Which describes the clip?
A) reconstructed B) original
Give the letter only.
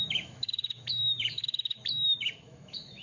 A